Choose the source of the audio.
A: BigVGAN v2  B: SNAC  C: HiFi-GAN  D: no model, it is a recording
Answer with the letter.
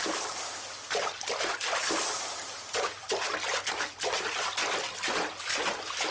A